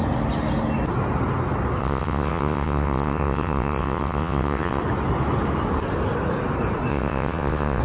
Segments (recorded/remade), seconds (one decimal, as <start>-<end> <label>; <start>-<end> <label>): 0.0-1.8 recorded; 1.8-4.8 remade; 4.8-6.9 recorded; 6.9-7.8 remade